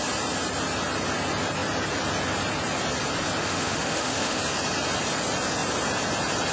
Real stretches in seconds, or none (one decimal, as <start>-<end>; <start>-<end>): 0.0-3.4; 4.4-6.5